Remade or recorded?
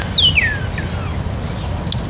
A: recorded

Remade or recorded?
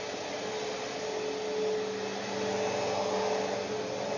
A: recorded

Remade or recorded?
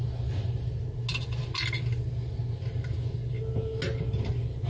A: recorded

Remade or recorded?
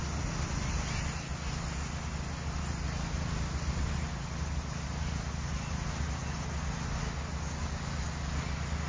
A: recorded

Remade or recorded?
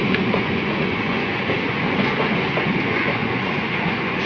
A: remade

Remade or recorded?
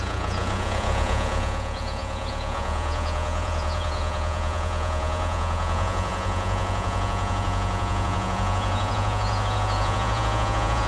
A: remade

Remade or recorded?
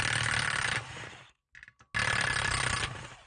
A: recorded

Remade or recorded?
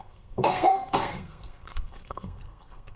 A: remade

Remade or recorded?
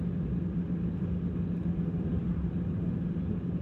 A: recorded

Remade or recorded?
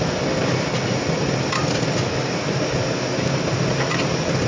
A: recorded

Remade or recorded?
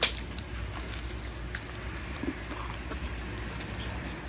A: recorded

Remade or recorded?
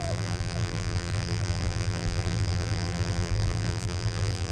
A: remade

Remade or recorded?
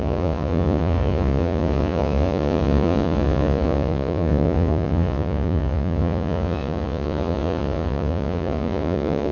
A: remade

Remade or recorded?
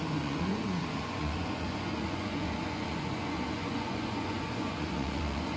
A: remade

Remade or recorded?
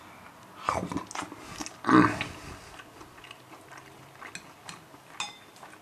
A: recorded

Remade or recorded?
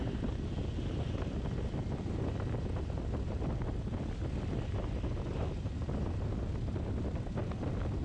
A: recorded